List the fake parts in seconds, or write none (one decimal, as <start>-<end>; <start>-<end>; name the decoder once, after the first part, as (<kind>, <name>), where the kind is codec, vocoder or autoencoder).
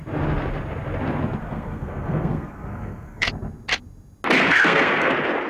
1.4-3.3 (codec, SNAC); 4.5-5.1